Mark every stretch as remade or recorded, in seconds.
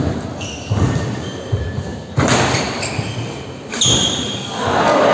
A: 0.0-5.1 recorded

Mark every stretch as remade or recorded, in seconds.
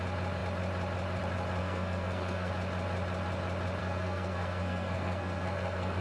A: 0.0-1.6 recorded; 1.6-2.5 remade; 2.5-3.8 recorded; 3.8-6.0 remade